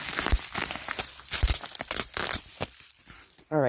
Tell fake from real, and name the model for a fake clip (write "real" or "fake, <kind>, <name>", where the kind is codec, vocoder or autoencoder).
fake, vocoder, BigVGAN v2